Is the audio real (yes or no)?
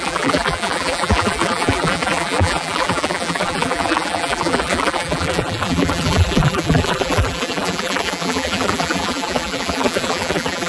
no